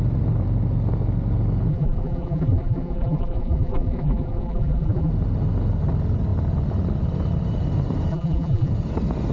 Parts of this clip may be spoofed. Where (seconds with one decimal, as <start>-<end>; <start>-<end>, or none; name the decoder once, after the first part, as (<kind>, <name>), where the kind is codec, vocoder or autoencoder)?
1.7-5.1 (vocoder, BigVGAN v2); 8.1-8.7